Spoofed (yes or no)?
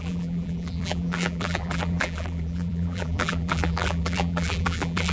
yes